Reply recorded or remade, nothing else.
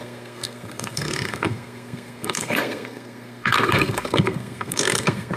remade